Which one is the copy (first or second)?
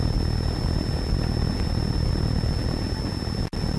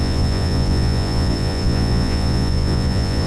second